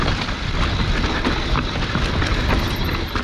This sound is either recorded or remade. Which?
recorded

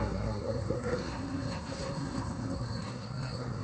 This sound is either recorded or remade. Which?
remade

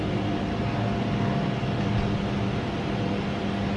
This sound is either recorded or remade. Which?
recorded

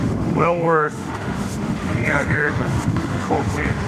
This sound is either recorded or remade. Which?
remade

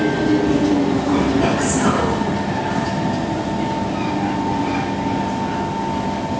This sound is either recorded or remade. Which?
recorded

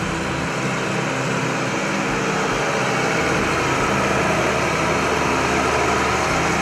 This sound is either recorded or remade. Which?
recorded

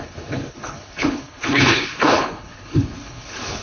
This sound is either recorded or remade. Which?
remade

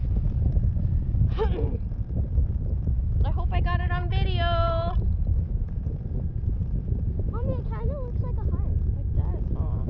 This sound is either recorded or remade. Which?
recorded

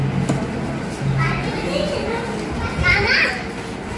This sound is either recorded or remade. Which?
recorded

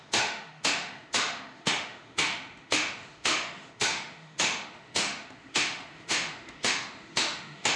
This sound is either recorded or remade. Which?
remade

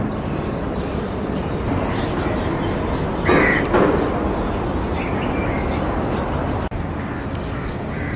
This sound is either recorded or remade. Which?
recorded